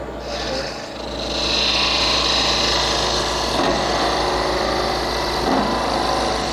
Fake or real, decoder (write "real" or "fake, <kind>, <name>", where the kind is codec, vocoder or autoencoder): real